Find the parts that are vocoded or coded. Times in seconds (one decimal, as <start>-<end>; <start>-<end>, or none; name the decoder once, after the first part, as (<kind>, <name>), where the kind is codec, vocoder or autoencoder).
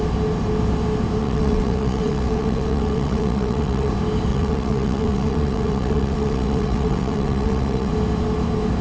1.2-3.9 (vocoder, WaveNeXt); 4.3-7.9